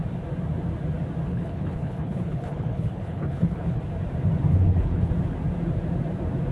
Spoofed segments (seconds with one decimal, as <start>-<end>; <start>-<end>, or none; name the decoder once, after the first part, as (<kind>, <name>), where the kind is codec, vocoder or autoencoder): 1.3-3.8 (codec, HILCodec); 4.5-5.1